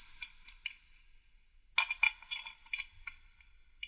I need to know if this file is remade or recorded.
recorded